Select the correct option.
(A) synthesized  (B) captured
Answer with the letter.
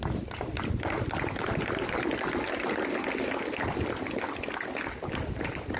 B